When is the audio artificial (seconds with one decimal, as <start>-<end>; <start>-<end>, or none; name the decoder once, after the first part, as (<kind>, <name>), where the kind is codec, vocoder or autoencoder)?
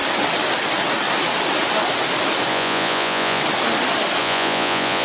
2.5-3.4 (vocoder, Vocos); 4.2-5.0